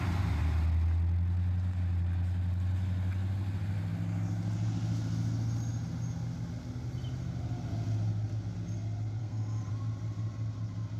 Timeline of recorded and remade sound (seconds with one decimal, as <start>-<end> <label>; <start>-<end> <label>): 0.0-9.2 recorded; 9.2-9.7 remade; 9.7-11.0 recorded